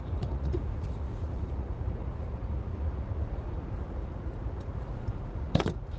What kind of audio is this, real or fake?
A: fake